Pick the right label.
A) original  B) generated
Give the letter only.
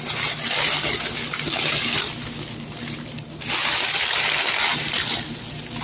A